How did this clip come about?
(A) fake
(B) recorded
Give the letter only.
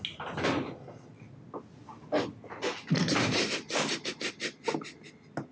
B